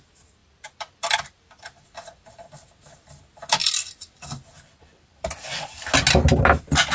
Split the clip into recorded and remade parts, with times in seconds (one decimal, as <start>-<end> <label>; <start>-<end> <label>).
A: 0.0-0.4 recorded; 0.4-2.3 remade; 2.3-3.6 recorded; 3.6-5.9 remade; 5.9-6.9 recorded